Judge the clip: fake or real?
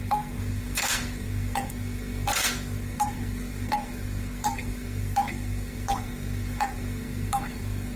fake